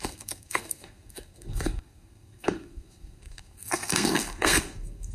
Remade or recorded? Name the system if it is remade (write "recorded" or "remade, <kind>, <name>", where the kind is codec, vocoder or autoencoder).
remade, codec, SNAC